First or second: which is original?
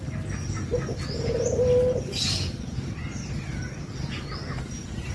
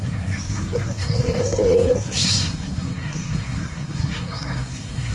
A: first